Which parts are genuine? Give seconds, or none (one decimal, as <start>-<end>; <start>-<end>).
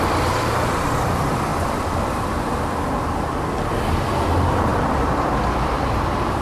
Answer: 0.0-1.5; 2.6-4.7; 6.0-6.4